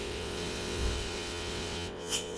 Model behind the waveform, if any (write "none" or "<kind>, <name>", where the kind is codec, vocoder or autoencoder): vocoder, WaveNeXt